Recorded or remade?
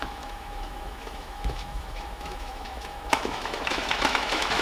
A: remade